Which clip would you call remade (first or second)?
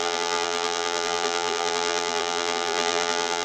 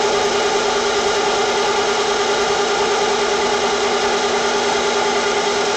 first